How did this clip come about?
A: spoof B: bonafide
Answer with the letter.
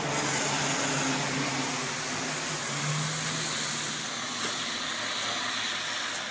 B